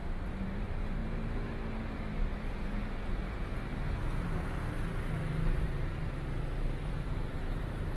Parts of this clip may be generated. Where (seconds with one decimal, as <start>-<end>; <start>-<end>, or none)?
0.0-1.0; 2.2-3.7; 7.2-8.0